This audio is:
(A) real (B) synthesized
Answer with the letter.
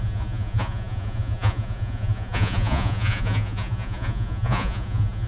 B